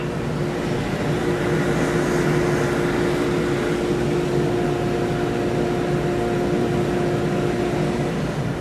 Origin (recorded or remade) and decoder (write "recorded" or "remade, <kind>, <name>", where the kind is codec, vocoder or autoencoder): recorded